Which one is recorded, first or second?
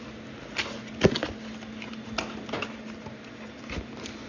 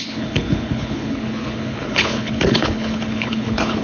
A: first